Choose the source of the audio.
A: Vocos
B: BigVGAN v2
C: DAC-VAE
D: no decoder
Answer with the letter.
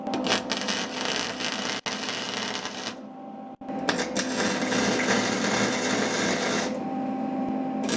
D